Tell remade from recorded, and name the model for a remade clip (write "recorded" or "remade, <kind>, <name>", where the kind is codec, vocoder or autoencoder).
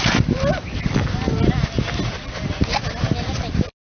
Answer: recorded